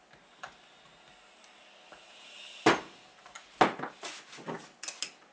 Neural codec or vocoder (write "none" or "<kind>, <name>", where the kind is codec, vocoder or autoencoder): none